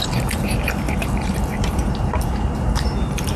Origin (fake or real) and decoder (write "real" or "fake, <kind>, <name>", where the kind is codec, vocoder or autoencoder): fake, vocoder, BigVGAN v2